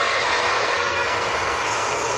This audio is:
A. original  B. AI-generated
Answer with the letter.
B